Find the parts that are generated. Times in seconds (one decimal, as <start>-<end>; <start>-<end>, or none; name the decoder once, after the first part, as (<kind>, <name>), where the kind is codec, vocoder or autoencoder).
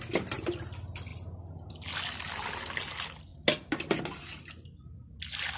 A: none